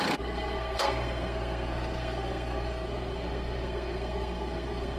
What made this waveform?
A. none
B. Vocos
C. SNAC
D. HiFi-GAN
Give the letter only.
C